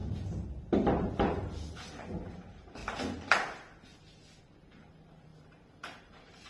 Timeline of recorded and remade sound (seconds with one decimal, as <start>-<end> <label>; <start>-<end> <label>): 0.0-2.3 recorded; 2.3-2.8 remade; 2.8-4.4 recorded; 4.4-5.3 remade; 5.3-6.0 recorded; 6.0-6.5 remade